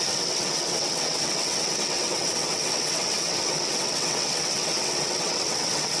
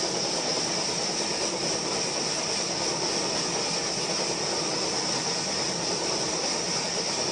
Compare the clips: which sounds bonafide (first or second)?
second